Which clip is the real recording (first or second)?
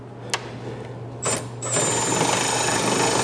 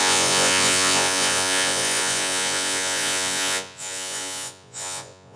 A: first